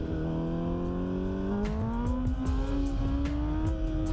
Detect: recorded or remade recorded